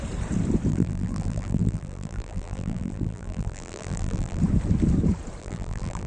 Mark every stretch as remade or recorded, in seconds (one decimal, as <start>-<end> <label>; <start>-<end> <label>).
0.0-0.7 recorded; 0.7-4.4 remade; 4.4-5.4 recorded; 5.4-6.1 remade